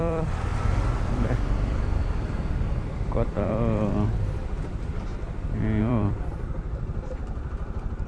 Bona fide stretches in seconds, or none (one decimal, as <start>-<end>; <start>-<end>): 5.1-5.8